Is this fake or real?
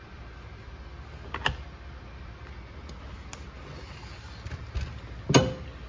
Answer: real